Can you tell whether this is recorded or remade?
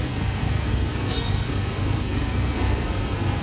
remade